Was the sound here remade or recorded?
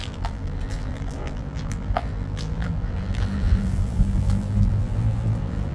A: remade